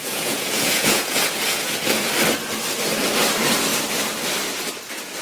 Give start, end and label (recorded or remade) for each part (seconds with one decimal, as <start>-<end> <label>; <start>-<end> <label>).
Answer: 0.0-2.1 remade; 2.1-5.2 recorded